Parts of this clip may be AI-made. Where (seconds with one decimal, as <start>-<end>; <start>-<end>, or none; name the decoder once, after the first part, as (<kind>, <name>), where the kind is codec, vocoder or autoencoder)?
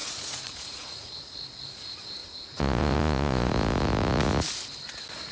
0.0-1.1 (vocoder, Vocos); 2.2-3.5